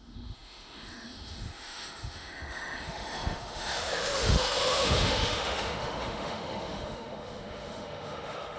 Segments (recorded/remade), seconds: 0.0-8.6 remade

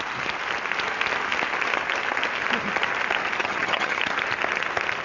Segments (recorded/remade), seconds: 0.0-3.4 recorded; 3.4-4.0 remade; 4.0-5.0 recorded

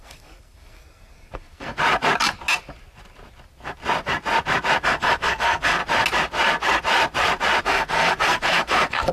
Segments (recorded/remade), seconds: 0.0-1.8 remade; 1.8-4.8 recorded; 4.8-5.8 remade; 5.8-7.6 recorded; 7.6-9.1 remade

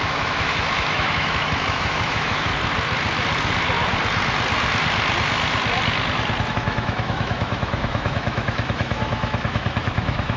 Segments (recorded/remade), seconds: 0.0-2.5 remade; 2.5-6.5 recorded; 6.5-10.4 remade

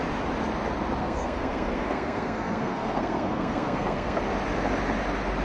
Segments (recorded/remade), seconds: 0.0-1.0 recorded; 1.0-4.2 remade; 4.2-5.4 recorded

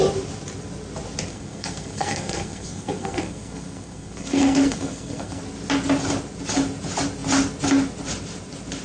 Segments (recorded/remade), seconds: 0.0-1.3 recorded; 1.3-5.4 remade; 5.4-8.8 recorded

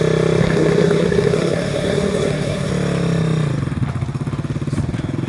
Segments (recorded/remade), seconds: 0.0-0.4 recorded; 0.4-2.7 remade; 2.7-5.3 recorded

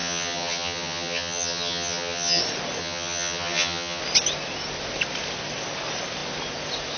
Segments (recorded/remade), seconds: 0.0-2.4 remade; 2.4-2.8 recorded; 2.8-4.0 remade; 4.0-7.0 recorded